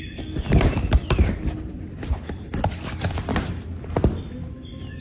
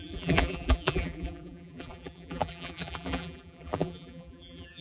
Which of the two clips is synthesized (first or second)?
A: second